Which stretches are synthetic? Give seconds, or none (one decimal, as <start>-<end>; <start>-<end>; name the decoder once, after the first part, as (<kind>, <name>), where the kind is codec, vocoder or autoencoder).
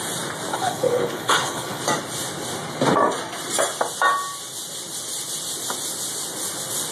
0.5-1.8 (codec, HILCodec)